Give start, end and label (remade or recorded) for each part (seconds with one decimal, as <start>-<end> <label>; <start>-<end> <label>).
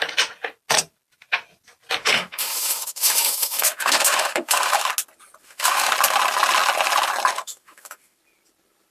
0.0-2.0 recorded; 2.0-4.9 remade; 4.9-5.4 recorded; 5.4-5.9 remade; 5.9-7.3 recorded; 7.3-8.2 remade; 8.2-8.9 recorded